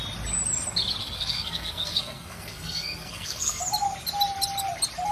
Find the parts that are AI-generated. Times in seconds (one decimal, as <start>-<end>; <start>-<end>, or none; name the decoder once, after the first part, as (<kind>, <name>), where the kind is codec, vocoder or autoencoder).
1.0-3.6 (codec, SNAC)